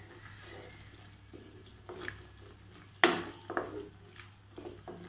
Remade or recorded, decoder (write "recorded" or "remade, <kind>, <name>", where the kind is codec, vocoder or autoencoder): recorded